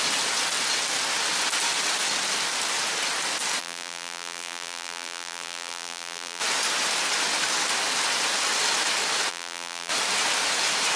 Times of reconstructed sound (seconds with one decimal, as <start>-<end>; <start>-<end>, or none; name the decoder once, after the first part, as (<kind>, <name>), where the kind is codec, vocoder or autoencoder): 3.6-6.4 (vocoder, BigVGAN v2); 9.3-9.9